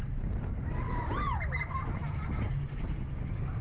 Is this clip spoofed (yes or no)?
no